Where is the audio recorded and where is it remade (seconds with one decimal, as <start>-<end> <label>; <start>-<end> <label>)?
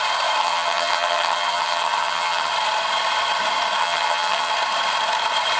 0.0-0.4 recorded; 0.4-2.5 remade; 2.5-3.8 recorded; 3.8-4.5 remade; 4.5-5.6 recorded